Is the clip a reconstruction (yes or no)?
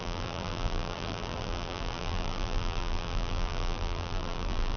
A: yes